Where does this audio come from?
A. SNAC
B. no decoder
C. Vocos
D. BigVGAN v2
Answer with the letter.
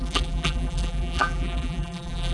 D